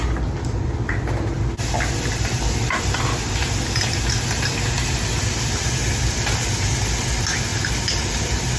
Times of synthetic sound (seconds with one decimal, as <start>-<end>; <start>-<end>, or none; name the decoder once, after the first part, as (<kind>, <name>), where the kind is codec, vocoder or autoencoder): none